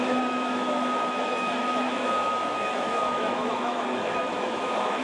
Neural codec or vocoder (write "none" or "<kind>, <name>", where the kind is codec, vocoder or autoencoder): autoencoder, DAC-VAE